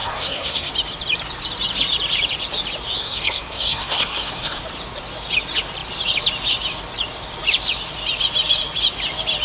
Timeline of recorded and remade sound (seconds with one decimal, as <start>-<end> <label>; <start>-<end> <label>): 0.0-0.7 remade; 0.7-3.0 recorded; 3.0-4.6 remade; 4.6-9.4 recorded